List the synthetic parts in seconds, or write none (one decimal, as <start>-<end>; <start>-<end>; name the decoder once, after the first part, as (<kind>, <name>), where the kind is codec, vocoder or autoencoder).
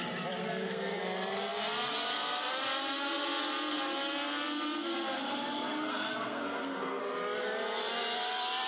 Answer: 0.4-1.0 (codec, SNAC); 5.9-7.0